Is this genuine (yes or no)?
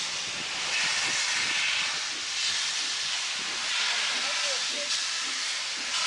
yes